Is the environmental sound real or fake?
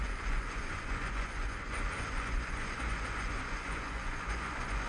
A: fake